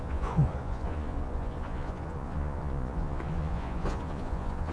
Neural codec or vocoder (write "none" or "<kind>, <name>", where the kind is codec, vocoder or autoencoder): vocoder, Vocos